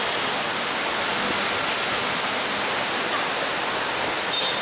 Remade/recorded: recorded